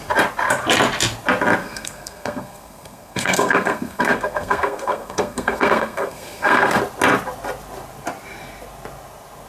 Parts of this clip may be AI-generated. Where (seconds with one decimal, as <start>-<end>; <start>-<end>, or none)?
1.6-6.8